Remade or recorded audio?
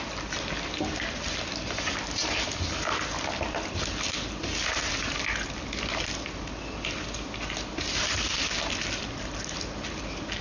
recorded